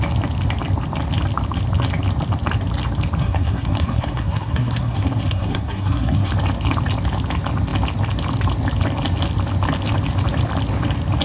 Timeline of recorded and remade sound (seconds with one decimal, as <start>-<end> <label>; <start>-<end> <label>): 0.0-3.2 recorded; 3.2-6.3 remade; 6.3-11.2 recorded